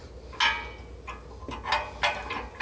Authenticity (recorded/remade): recorded